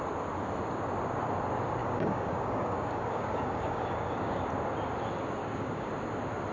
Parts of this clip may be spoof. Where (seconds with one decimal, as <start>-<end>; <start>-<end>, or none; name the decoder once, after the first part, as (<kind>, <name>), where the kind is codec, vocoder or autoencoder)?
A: 1.8-4.4 (codec, DAC); 5.4-5.9

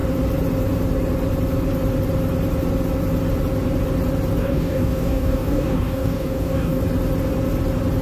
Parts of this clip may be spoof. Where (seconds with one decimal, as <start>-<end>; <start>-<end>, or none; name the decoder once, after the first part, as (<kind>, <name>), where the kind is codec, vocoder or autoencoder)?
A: 4.4-6.8 (codec, DAC)

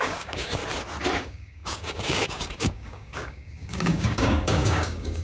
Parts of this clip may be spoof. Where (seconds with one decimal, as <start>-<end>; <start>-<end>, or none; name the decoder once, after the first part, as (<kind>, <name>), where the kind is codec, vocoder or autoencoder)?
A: 0.0-0.6 (codec, DAC); 1.2-5.2

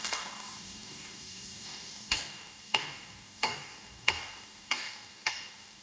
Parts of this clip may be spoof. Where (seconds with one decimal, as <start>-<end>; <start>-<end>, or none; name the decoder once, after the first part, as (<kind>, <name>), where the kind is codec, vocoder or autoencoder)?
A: 0.0-5.8 (codec, DAC)